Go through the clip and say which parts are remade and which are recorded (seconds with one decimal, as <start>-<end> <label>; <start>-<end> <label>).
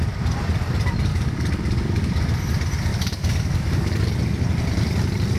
0.0-1.1 recorded; 1.1-2.4 remade; 2.4-2.9 recorded; 2.9-4.1 remade; 4.1-5.4 recorded